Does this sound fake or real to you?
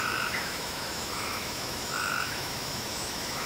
fake